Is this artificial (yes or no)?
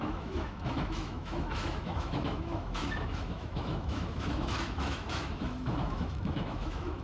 yes